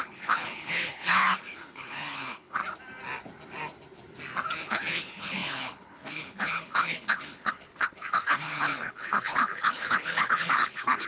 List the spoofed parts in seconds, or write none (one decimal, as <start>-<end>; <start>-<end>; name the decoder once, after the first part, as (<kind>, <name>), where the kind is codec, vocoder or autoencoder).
0.0-2.6 (codec, HILCodec); 4.6-11.1